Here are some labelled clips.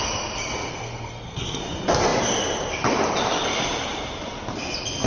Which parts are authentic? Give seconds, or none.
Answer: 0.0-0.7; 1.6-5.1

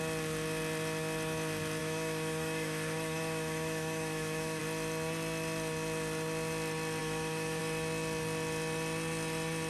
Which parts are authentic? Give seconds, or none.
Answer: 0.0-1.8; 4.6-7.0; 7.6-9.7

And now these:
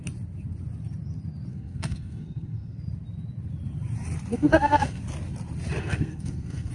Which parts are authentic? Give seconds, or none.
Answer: 0.0-1.5; 2.8-4.3; 5.0-5.8

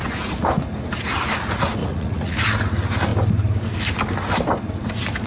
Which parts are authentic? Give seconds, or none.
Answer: 0.0-1.8; 2.4-5.3